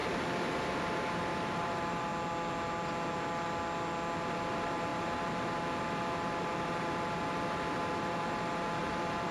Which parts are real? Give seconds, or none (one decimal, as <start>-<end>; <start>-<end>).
2.1-4.2